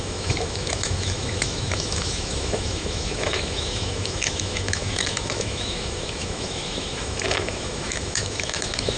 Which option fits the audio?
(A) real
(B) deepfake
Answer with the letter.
B